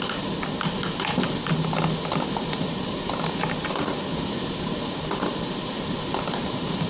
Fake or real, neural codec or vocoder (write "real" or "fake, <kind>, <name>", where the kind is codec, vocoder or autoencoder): real